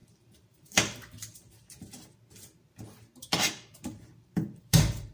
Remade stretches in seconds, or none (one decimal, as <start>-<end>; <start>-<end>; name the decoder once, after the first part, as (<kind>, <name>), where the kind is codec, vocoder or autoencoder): 0.0-2.2 (vocoder, BigVGAN v2); 3.2-5.1